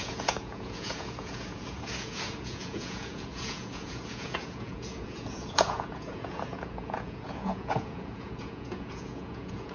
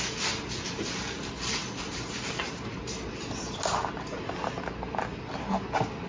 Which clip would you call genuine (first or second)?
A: second